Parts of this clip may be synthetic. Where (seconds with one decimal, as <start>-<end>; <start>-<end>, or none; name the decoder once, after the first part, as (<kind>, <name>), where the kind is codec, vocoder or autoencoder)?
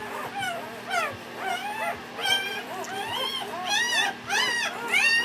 2.2-3.8 (vocoder, BigVGAN v2)